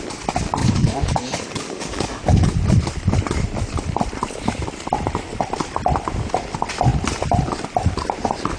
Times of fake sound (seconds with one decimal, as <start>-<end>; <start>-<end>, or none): 0.6-2.5